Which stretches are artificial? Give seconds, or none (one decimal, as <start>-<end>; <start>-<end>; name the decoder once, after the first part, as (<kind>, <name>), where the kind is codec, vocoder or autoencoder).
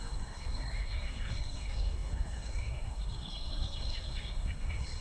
0.0-5.0 (codec, SNAC)